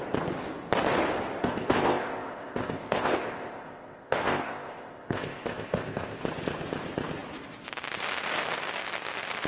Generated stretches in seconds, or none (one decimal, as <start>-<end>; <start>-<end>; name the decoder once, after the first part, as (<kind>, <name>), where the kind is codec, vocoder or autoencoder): 1.4-6.2 (codec, ZipCodec)